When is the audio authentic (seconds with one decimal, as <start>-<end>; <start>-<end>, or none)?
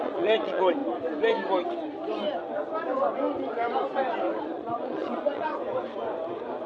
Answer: 0.8-4.4; 5.5-6.7